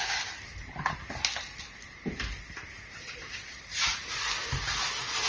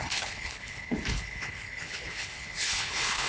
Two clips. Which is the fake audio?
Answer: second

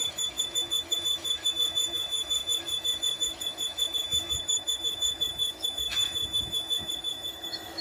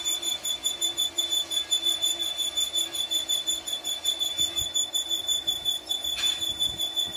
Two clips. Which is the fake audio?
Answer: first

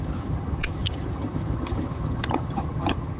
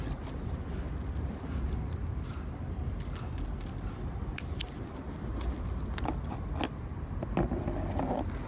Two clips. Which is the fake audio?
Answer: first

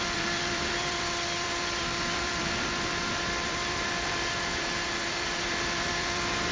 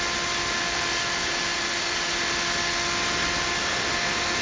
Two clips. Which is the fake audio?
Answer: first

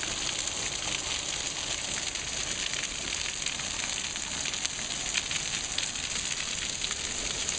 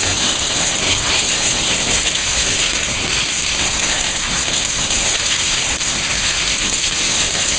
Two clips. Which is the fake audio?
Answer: second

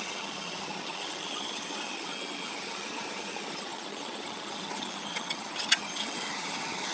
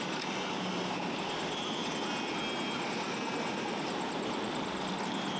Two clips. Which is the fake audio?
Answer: first